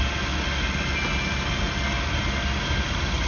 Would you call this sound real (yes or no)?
yes